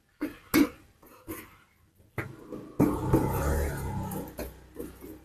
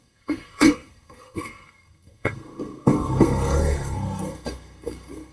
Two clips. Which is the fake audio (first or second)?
second